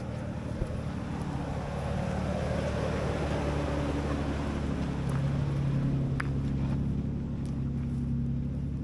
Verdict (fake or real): real